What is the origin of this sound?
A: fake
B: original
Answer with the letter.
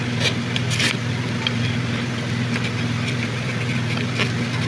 B